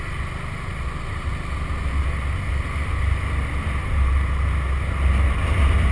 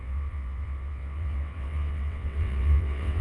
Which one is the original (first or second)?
first